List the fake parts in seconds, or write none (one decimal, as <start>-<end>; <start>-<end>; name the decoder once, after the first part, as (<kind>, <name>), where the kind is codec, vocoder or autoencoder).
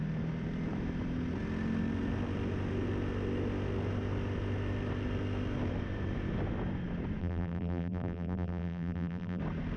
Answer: 7.2-9.4 (vocoder, BigVGAN v2)